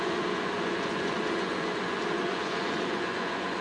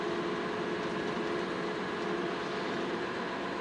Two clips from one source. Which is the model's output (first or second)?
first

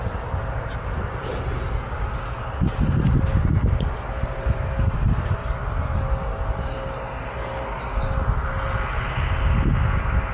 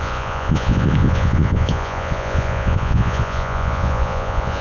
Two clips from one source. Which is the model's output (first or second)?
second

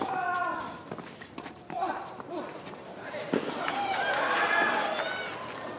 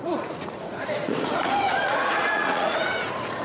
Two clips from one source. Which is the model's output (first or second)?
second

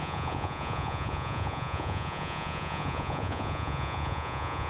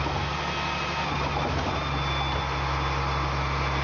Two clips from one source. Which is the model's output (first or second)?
first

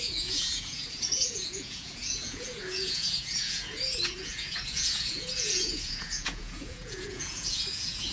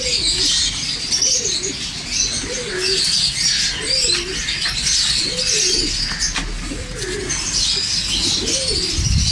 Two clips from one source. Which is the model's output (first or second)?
first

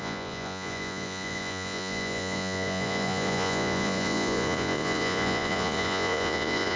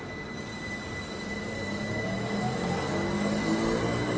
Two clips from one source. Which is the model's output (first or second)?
first